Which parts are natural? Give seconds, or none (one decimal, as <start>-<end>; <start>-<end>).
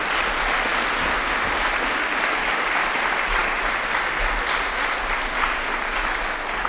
0.0-6.7